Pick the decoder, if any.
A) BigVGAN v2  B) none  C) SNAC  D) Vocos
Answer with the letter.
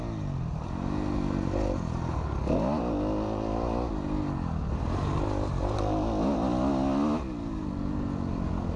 B